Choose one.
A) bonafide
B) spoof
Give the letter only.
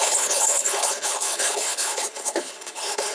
B